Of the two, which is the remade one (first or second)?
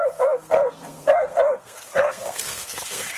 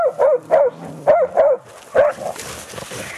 first